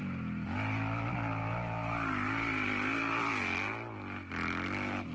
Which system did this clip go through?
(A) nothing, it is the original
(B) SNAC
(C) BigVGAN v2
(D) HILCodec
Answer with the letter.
A